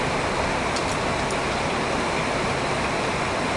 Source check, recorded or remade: recorded